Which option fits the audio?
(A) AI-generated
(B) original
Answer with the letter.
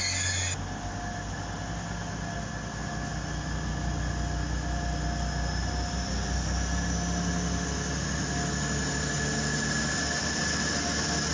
B